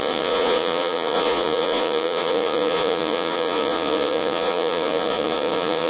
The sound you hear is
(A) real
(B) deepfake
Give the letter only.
B